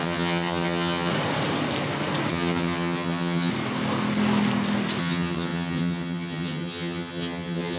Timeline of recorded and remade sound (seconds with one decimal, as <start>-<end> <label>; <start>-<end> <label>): 0.0-1.1 remade; 1.1-2.3 recorded; 2.3-3.5 remade; 3.5-5.0 recorded; 5.0-7.8 remade